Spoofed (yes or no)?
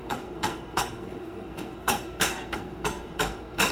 yes